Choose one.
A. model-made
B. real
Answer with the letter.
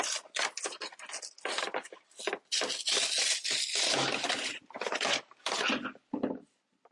B